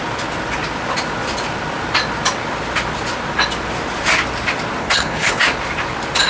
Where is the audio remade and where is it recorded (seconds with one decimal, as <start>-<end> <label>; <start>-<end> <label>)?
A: 0.0-4.8 recorded; 4.8-5.4 remade; 5.4-6.3 recorded